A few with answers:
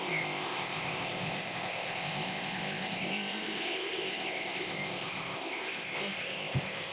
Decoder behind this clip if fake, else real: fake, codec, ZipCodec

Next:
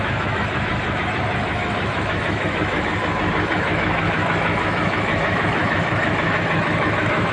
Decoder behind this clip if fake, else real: fake, autoencoder, DAC-VAE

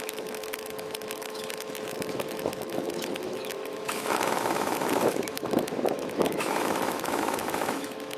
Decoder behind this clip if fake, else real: fake, autoencoder, DAC-VAE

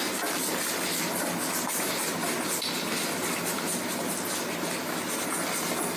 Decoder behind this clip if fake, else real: real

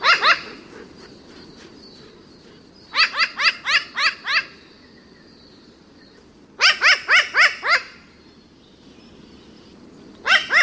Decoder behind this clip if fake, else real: real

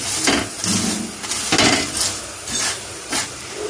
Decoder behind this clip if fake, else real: real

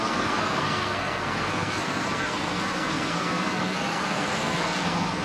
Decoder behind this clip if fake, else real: fake, codec, SNAC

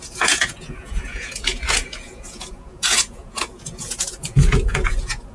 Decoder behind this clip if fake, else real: fake, vocoder, Vocos